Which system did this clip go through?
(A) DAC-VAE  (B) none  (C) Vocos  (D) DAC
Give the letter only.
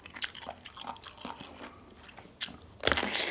B